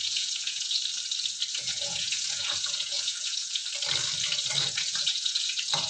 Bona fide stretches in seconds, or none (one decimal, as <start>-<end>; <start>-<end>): 0.8-1.5; 3.6-4.6